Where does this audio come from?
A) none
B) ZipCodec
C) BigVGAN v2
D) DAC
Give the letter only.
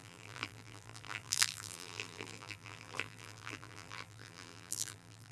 C